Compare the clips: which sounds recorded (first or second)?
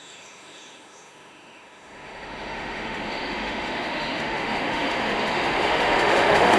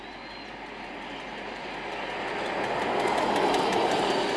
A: second